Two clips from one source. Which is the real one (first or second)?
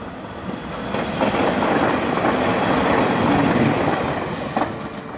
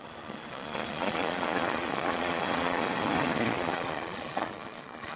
first